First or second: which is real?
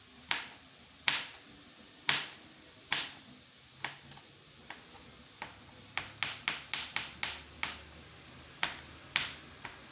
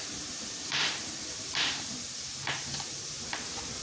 first